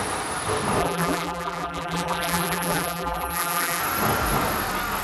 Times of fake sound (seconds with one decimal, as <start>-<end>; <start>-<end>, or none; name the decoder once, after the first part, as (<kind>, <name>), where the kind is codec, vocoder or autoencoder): 0.8-3.8 (vocoder, BigVGAN v2)